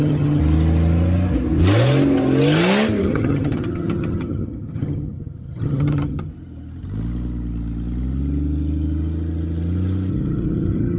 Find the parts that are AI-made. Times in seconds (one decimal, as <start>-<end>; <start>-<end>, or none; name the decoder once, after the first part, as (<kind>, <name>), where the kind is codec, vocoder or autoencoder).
0.0-0.4 (vocoder, HiFi-GAN); 3.0-6.3; 10.1-11.0